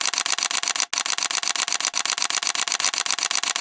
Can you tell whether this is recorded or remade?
recorded